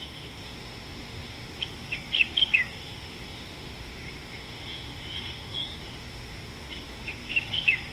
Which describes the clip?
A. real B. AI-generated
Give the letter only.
B